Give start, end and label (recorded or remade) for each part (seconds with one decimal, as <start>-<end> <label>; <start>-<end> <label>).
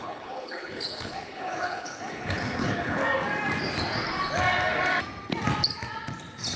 0.0-3.0 remade; 3.0-6.6 recorded